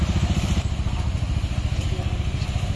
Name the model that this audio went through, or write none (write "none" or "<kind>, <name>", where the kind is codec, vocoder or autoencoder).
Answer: none